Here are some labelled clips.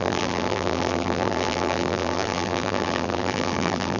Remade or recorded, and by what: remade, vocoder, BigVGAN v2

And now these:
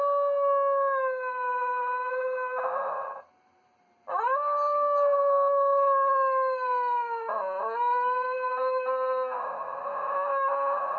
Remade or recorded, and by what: recorded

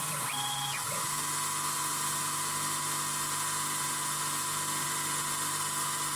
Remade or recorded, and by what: recorded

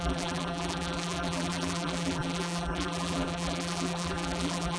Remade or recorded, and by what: remade, vocoder, BigVGAN v2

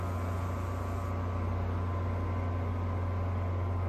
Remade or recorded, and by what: recorded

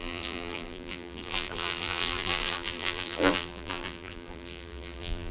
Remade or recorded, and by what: remade, vocoder, BigVGAN v2